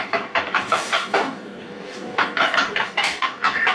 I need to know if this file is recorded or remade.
remade